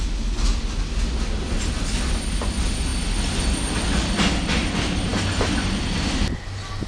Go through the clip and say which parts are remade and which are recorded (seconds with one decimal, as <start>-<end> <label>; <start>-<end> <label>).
0.0-6.9 recorded